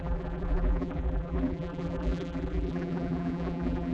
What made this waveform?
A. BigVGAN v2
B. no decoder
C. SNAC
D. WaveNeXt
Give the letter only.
A